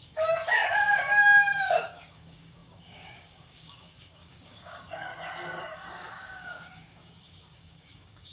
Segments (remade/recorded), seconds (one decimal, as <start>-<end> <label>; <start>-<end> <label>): 0.0-5.1 remade; 5.1-5.6 recorded; 5.6-8.3 remade